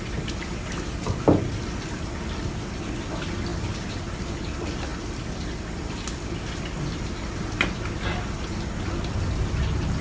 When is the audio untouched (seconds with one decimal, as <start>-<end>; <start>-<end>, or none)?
0.0-10.0